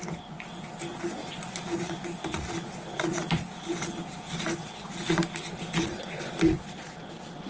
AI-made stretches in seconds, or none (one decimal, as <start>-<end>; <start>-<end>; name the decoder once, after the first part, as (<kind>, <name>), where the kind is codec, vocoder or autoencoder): 0.9-3.2 (vocoder, Vocos); 4.6-5.2; 5.8-7.0